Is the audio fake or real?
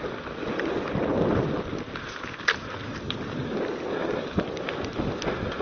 real